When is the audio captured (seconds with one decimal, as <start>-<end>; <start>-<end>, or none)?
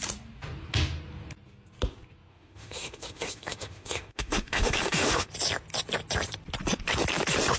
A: 0.0-2.3; 5.3-7.6